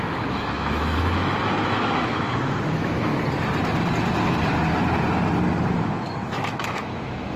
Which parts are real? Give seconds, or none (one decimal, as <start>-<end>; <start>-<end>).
3.1-5.8